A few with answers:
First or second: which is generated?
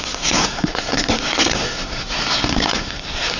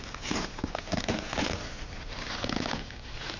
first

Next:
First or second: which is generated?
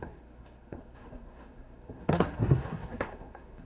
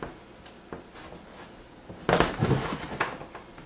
first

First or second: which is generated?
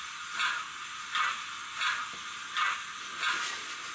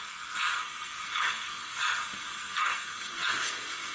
second